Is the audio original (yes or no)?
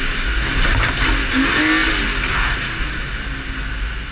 yes